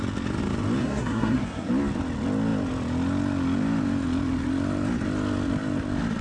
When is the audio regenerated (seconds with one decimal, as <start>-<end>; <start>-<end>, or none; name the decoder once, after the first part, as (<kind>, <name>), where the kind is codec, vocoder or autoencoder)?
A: 0.8-1.7 (codec, SNAC)